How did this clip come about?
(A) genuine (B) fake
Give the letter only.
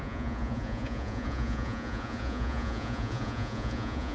B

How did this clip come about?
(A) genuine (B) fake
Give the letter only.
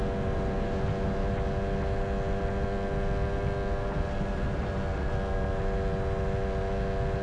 A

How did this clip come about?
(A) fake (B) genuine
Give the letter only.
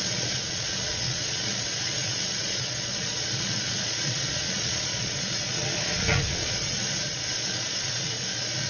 A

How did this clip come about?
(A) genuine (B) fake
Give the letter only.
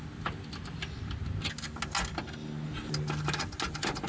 A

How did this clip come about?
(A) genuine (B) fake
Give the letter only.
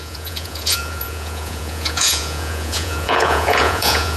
B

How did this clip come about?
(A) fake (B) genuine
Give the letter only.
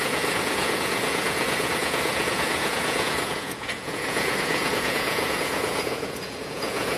A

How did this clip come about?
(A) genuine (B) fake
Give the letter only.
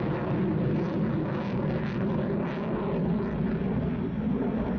A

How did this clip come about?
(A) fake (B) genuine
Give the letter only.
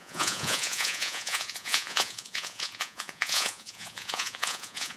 A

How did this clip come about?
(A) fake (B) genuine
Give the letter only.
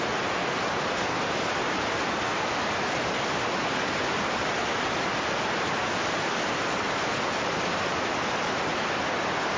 B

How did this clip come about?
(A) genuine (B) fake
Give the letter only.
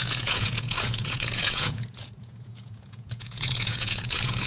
B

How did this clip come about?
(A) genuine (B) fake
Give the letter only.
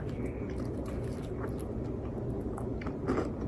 A